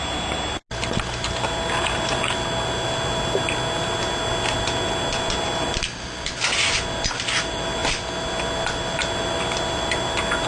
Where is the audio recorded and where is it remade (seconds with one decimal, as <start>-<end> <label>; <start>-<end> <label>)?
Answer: 0.0-10.5 recorded